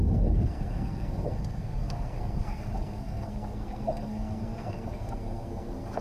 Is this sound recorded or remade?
remade